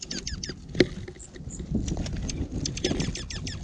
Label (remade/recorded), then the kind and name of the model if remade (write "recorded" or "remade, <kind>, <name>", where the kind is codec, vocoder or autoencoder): recorded